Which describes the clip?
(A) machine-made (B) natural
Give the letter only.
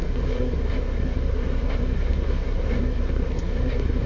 A